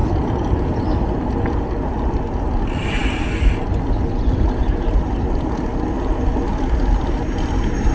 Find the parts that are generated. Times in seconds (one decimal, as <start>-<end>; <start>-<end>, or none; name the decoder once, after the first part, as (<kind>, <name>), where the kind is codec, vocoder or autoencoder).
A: none